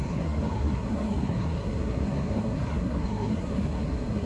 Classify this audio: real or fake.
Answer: fake